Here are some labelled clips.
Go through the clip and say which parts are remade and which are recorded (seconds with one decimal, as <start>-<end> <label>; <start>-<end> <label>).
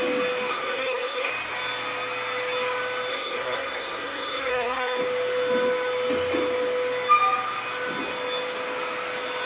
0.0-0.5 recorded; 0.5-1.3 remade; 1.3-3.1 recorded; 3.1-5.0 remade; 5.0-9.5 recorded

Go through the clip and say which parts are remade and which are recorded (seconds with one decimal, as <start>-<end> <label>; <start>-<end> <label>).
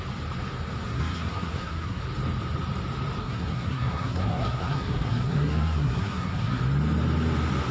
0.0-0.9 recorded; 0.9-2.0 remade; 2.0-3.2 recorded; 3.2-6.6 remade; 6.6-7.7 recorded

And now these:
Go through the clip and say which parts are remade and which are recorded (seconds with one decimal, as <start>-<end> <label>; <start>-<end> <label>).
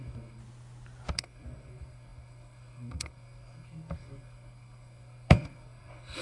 0.0-0.4 remade; 0.4-1.1 recorded; 1.1-6.2 remade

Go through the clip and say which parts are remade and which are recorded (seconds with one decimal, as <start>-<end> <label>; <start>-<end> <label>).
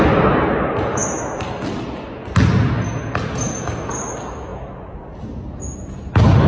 0.0-6.5 recorded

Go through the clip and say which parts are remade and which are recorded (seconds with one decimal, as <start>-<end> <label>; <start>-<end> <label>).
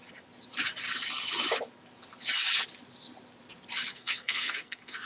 0.0-3.9 recorded; 3.9-5.1 remade